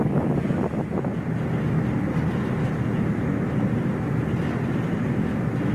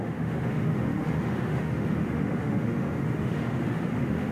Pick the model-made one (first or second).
second